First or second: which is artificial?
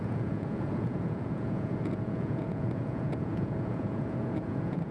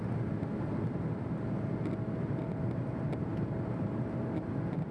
first